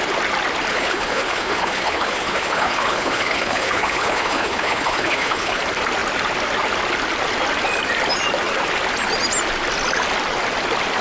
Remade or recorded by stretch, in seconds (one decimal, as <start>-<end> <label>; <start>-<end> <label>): 0.0-0.7 recorded; 0.7-5.6 remade; 5.6-11.0 recorded